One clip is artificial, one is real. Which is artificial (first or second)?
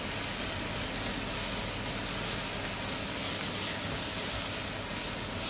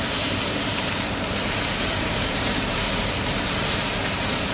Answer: second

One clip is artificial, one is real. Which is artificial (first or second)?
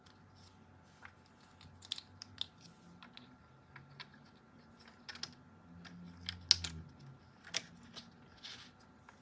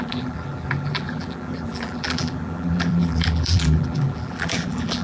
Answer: second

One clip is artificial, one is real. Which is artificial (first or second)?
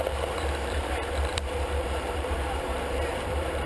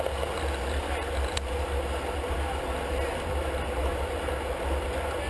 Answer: first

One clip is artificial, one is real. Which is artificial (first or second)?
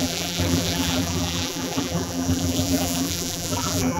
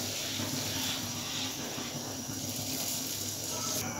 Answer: first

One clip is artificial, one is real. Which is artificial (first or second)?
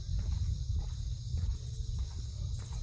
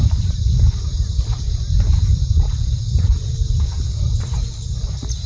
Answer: second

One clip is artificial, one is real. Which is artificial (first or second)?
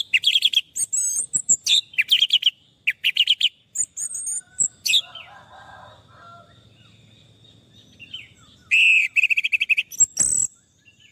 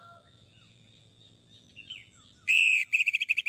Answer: second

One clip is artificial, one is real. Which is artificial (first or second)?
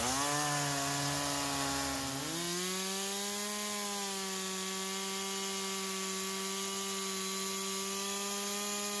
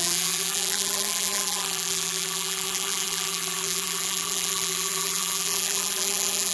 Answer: second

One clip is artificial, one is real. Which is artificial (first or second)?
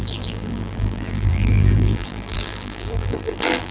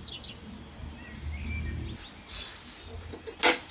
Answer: first